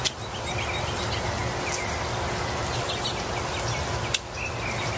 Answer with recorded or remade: recorded